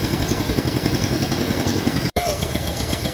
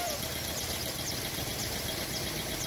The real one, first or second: second